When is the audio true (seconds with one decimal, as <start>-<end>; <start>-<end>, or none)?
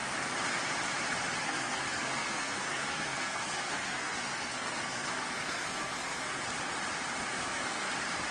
0.0-1.4; 6.4-7.3; 7.9-8.3